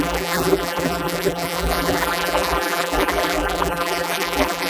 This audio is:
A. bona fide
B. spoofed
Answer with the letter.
B